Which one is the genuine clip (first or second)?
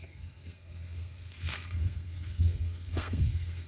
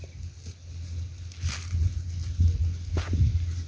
second